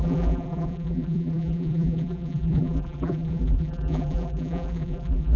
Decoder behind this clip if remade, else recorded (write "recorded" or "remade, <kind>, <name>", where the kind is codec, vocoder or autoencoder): remade, vocoder, BigVGAN v2